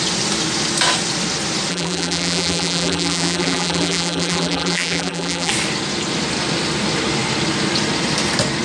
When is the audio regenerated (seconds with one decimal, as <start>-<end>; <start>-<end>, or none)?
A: 1.7-5.5